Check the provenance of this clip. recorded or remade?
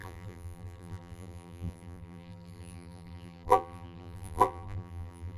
remade